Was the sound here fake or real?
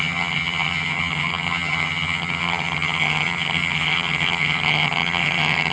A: fake